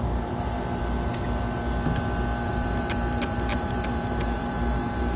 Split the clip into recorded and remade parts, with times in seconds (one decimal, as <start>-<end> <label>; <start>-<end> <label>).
0.0-1.1 remade; 1.1-2.5 recorded; 2.5-5.2 remade